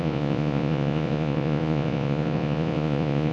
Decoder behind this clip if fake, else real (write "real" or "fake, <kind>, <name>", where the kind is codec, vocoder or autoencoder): fake, vocoder, Vocos